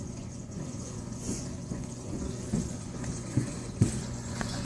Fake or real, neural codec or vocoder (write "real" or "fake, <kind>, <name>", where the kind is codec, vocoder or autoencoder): fake, vocoder, Vocos